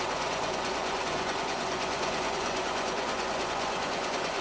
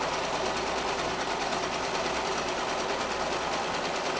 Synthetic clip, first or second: first